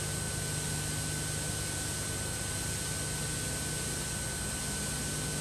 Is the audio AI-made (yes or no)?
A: no